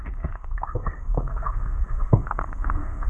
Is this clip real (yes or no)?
no